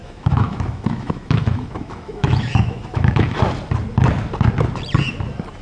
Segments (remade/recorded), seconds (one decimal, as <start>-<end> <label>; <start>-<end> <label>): 0.0-3.4 remade; 3.4-5.6 recorded